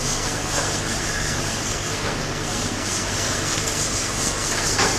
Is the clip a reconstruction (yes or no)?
yes